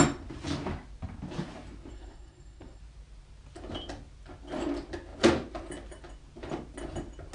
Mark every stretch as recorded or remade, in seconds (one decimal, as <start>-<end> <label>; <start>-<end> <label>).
0.0-1.9 recorded; 1.9-2.8 remade; 2.8-7.3 recorded